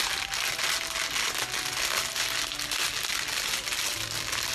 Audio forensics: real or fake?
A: real